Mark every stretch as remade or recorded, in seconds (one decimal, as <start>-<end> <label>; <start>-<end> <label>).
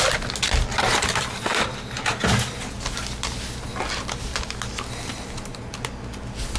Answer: 0.0-6.6 recorded